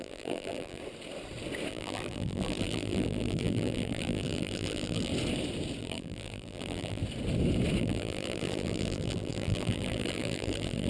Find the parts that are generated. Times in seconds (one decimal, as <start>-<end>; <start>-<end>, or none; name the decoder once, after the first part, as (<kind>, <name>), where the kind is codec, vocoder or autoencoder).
0.0-0.8 (vocoder, BigVGAN v2); 1.7-5.1; 5.8-7.0; 7.8-10.9